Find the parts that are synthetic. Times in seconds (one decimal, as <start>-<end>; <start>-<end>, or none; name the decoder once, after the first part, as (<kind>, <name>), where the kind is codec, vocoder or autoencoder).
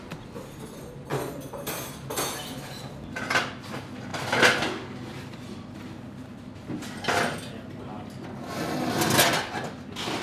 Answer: none